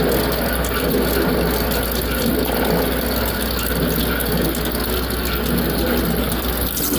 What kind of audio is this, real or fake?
real